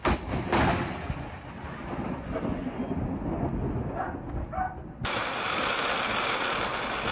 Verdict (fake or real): real